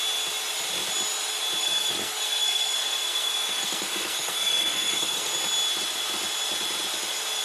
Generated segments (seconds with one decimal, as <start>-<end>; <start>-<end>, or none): 1.6-5.3